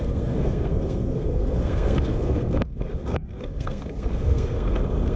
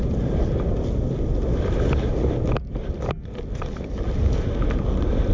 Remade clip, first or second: first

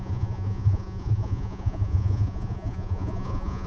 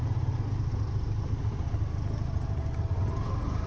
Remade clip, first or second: first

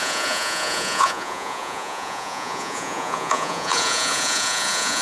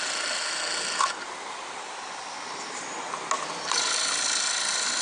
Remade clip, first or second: first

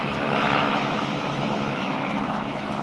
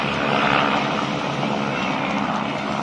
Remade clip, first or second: first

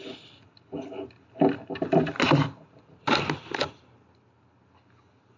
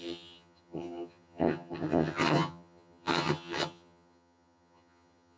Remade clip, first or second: second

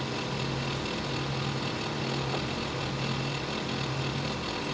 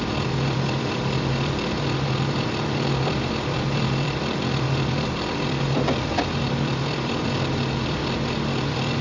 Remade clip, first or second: second